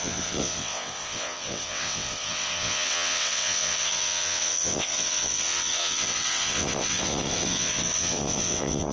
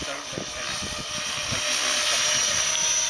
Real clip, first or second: second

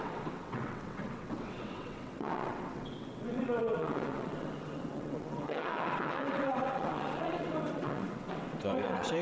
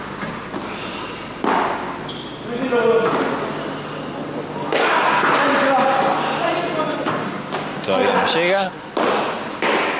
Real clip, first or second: second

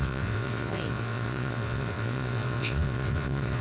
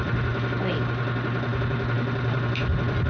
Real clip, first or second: second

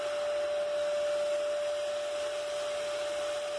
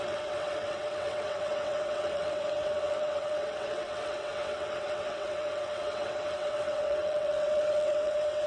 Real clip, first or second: first